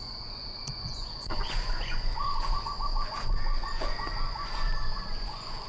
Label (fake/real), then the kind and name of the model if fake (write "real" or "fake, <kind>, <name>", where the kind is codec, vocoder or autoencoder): fake, vocoder, Vocos